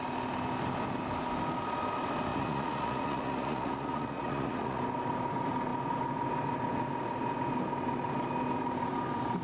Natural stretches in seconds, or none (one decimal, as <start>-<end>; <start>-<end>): 0.0-2.3; 4.8-9.4